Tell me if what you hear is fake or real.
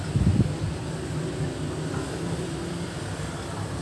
real